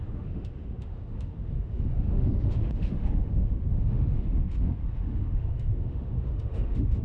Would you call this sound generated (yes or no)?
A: yes